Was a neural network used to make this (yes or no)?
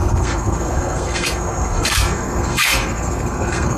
yes